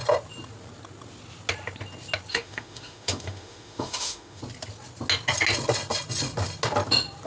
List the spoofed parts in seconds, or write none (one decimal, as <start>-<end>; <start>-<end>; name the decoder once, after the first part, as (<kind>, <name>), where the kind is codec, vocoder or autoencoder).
2.3-4.4 (autoencoder, DAC-VAE)